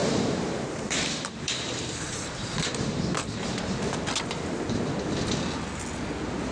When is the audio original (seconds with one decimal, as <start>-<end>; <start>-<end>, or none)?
3.0-6.5